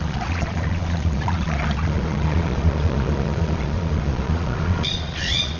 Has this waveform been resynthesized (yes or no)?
yes